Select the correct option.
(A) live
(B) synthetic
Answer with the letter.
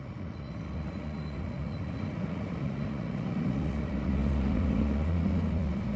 B